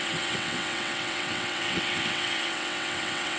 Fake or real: fake